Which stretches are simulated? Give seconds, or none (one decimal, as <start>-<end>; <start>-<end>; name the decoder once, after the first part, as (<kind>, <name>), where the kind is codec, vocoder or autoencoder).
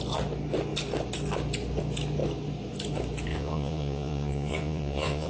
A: 3.3-5.3 (vocoder, Vocos)